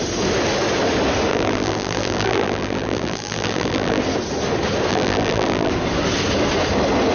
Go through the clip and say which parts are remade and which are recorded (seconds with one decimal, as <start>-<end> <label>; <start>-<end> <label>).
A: 0.0-1.3 recorded; 1.3-4.0 remade; 4.0-4.9 recorded; 4.9-5.7 remade; 5.7-7.1 recorded